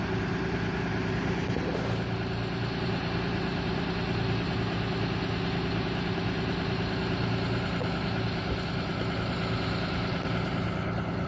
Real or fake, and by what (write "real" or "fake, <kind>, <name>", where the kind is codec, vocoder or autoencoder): real